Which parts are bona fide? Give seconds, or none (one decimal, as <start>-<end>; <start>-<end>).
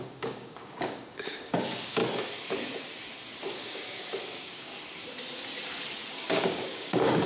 2.0-3.4; 4.7-6.1